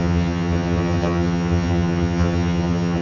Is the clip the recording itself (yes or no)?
no